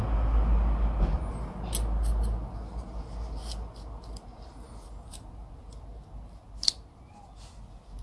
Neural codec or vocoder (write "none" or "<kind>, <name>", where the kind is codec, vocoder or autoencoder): none